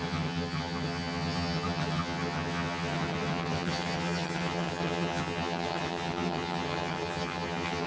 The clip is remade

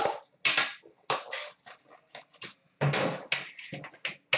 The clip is recorded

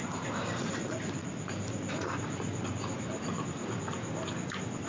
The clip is recorded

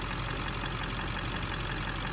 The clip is recorded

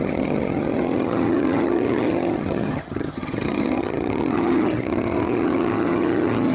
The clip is remade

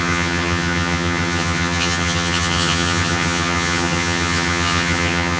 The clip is remade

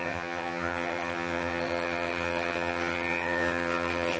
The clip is remade